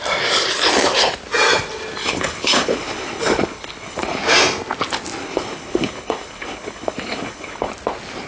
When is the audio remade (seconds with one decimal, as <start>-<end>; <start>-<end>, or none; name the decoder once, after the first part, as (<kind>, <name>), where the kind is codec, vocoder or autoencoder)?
2.0-4.2 (codec, HILCodec); 5.2-7.7